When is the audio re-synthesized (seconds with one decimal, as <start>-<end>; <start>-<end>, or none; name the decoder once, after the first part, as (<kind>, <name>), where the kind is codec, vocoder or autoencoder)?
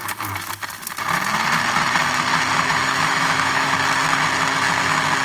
2.7-3.7 (autoencoder, DAC-VAE)